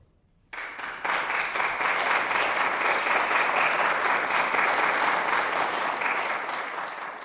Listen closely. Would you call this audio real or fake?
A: real